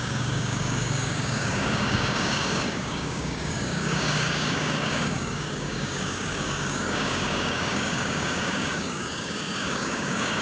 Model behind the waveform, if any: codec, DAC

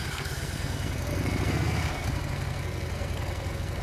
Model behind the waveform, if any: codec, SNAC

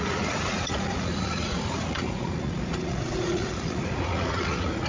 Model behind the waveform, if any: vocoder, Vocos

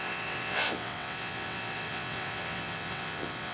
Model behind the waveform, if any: vocoder, WaveNeXt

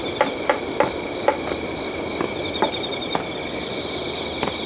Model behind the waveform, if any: none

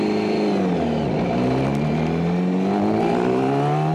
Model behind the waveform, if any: none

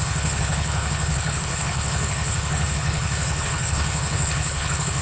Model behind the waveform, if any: codec, HILCodec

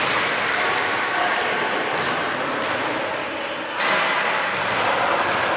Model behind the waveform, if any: none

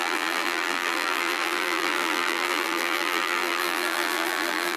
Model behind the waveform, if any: vocoder, BigVGAN v2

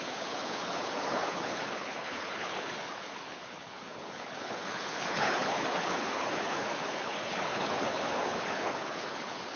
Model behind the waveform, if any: codec, HILCodec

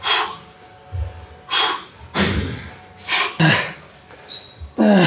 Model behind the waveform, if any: none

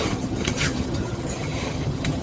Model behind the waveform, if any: vocoder, HiFi-GAN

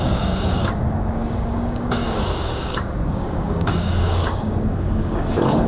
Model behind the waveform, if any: codec, DAC